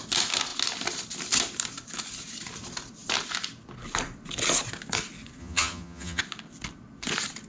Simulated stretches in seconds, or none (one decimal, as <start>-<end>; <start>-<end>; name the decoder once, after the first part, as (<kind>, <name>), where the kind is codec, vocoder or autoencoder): 5.4-6.2 (vocoder, HiFi-GAN)

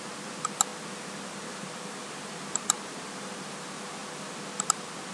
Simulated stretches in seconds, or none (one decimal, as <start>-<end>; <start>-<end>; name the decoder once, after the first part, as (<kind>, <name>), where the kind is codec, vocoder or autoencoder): none

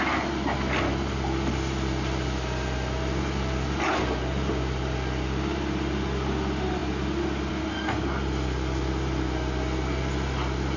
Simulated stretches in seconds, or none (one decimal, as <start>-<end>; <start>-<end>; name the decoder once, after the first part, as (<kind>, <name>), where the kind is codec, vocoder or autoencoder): none